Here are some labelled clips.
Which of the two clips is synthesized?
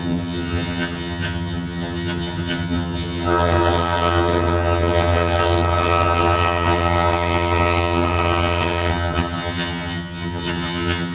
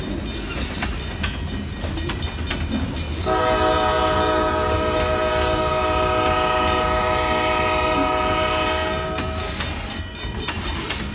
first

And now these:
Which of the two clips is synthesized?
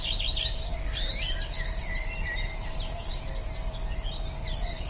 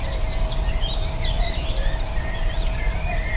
second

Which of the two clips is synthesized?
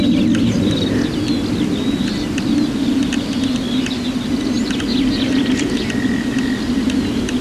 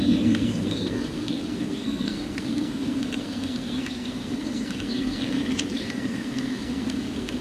second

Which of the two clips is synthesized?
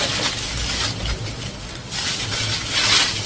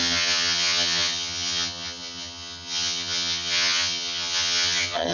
second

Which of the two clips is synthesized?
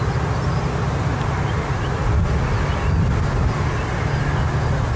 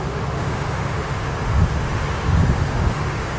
second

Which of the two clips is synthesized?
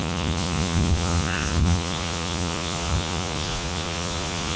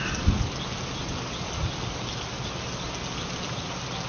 first